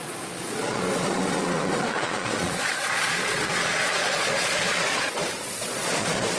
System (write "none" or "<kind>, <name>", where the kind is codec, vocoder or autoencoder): vocoder, Vocos